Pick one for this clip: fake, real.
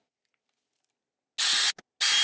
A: real